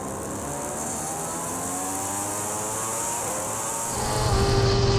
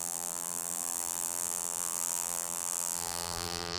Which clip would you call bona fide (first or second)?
first